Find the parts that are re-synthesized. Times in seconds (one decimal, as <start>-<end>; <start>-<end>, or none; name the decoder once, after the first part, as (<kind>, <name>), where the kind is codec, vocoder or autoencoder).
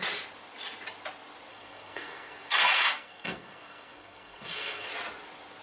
1.5-4.9 (codec, SNAC)